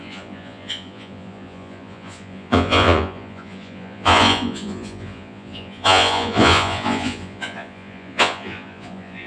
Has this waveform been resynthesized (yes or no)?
yes